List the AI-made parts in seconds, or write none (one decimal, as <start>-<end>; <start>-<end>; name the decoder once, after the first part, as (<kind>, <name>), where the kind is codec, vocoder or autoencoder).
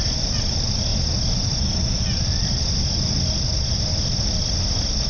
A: none